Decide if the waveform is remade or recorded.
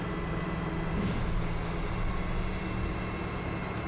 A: recorded